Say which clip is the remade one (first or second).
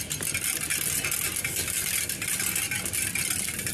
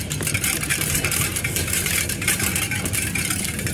second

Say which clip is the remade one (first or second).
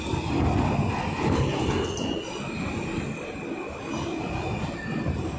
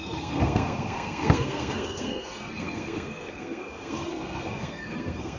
second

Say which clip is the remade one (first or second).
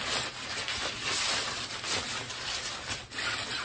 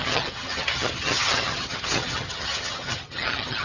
second